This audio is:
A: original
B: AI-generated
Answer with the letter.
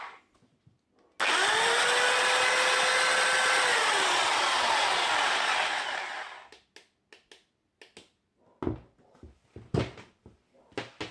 A